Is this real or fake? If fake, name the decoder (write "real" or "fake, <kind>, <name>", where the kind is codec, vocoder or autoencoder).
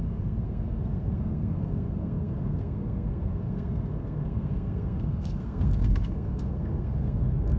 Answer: fake, codec, SNAC